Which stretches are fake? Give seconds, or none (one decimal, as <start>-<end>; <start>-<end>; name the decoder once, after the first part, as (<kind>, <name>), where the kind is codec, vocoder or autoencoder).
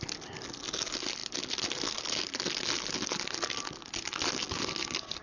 none